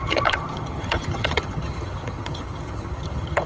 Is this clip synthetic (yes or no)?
yes